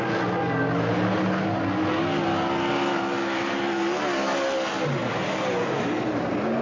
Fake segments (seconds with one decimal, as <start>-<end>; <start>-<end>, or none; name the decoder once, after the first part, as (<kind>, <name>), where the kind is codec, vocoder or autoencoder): 2.9-3.5 (autoencoder, DAC-VAE)